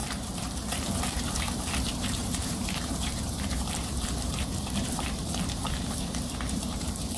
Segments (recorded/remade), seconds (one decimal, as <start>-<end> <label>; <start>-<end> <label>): 0.0-7.2 remade